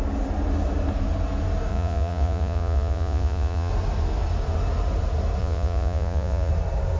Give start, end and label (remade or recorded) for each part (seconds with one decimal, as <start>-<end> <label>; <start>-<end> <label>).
0.0-1.7 recorded; 1.7-3.7 remade; 3.7-5.4 recorded; 5.4-6.5 remade; 6.5-7.0 recorded